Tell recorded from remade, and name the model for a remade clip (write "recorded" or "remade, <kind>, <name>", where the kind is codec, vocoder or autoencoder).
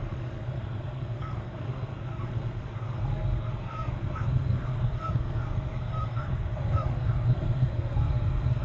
remade, codec, SNAC